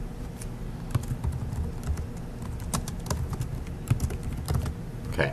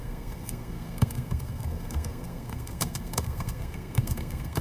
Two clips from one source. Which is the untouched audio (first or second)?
first